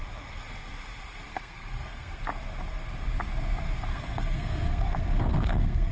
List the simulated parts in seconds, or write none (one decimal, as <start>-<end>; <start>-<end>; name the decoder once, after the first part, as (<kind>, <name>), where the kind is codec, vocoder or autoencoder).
1.3-2.2 (codec, SNAC); 3.9-5.9